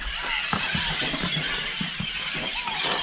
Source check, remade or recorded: recorded